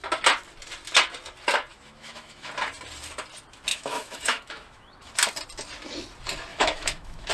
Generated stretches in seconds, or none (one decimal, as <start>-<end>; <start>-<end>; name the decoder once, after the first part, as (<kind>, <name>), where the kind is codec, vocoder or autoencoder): 1.7-2.5 (autoencoder, DAC-VAE); 3.7-5.1; 6.5-7.3